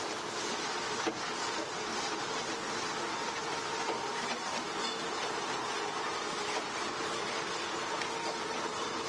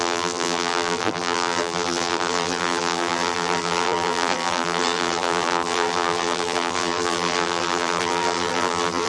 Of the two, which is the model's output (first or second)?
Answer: second